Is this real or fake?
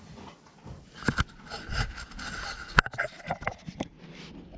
real